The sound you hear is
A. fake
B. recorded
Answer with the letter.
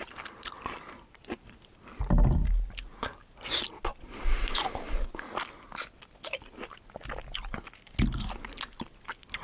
B